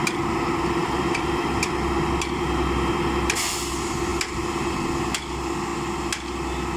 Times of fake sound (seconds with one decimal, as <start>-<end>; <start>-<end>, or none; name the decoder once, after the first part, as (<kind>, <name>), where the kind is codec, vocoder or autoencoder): 0.8-1.3 (vocoder, BigVGAN v2)